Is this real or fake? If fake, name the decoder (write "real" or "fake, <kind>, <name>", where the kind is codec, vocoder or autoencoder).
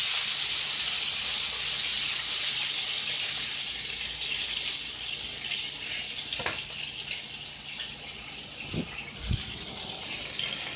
real